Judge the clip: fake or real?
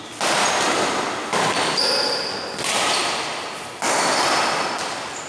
real